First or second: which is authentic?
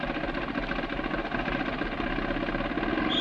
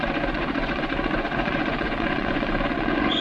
first